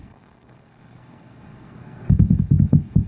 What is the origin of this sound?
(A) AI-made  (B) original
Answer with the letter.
A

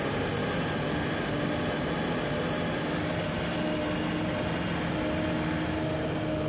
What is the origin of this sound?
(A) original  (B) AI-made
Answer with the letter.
A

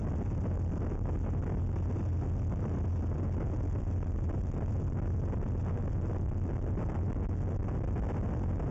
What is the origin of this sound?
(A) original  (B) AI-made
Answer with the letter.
A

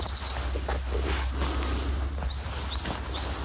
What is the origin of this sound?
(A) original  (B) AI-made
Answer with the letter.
A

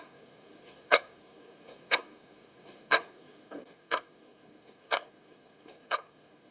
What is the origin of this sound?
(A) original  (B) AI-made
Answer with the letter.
B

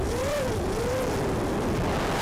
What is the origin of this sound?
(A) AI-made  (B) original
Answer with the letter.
B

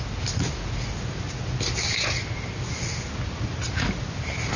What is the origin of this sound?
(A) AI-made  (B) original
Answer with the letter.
B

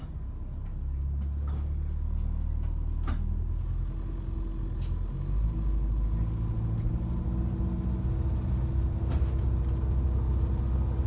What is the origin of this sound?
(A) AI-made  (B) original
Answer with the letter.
B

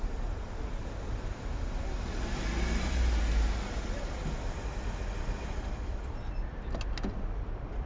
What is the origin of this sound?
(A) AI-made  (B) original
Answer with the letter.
B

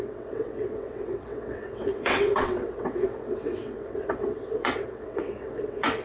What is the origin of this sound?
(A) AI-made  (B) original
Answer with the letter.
A